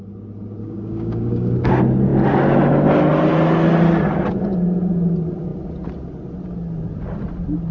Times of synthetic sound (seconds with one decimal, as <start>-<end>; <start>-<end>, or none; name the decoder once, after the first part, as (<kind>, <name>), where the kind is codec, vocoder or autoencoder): 0.6-1.7 (codec, DAC)